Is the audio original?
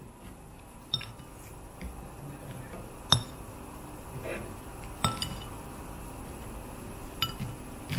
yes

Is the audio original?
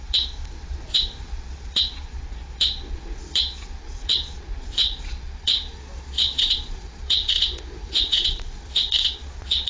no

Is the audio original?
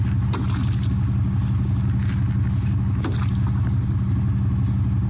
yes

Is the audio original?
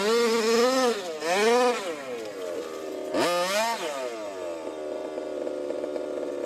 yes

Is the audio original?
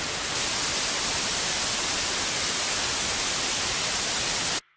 yes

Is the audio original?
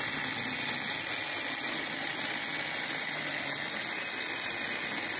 yes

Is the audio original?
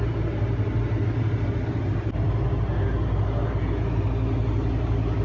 yes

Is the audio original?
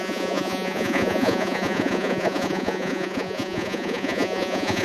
no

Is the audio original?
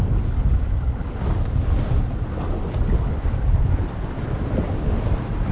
yes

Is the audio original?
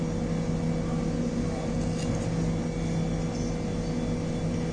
yes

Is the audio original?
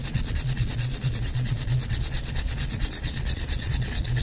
no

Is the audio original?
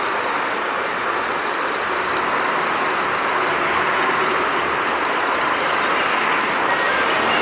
yes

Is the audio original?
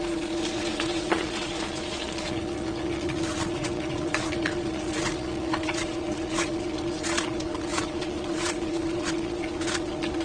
no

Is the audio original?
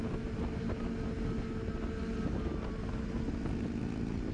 yes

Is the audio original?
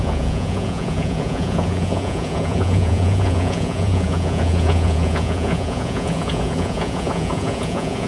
no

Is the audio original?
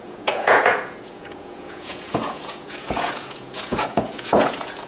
no